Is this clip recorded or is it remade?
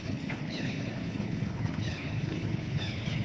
remade